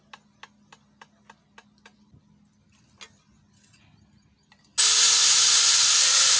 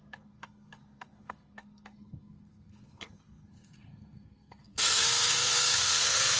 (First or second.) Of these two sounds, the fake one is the second